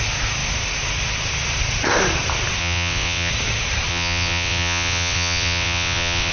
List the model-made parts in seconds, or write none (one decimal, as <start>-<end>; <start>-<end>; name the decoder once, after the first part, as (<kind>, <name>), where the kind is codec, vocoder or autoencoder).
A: 2.6-3.3 (vocoder, WaveNeXt); 3.9-6.3

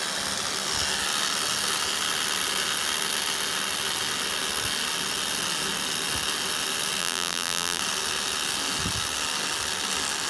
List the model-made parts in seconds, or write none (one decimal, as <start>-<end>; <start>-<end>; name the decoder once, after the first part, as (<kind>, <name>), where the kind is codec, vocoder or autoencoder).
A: 7.0-7.8 (vocoder, BigVGAN v2)